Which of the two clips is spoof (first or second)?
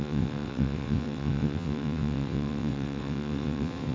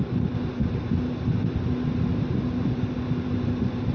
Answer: first